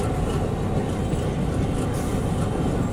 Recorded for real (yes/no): yes